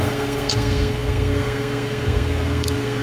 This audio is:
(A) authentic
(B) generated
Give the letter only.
B